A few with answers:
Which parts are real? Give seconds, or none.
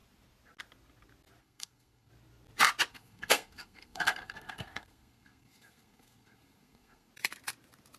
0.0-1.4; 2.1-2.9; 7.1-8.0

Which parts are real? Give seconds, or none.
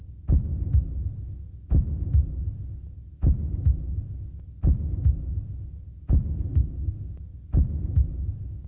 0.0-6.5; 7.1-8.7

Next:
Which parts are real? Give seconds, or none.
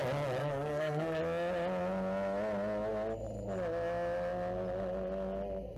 0.0-0.4; 1.2-5.8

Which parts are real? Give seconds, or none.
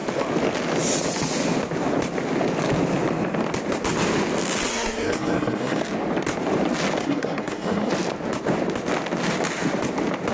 0.0-4.7; 5.8-7.0; 7.9-10.3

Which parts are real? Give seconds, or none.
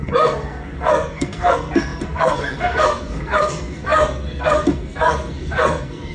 none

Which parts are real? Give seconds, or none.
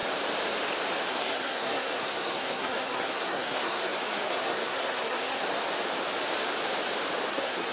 0.0-1.1; 5.4-7.3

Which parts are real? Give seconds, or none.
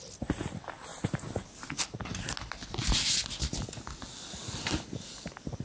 0.0-5.6